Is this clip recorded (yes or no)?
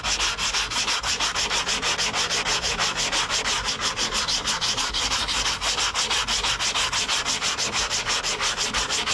yes